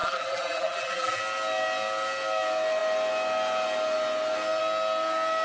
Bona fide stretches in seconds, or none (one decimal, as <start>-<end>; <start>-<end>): 1.2-5.4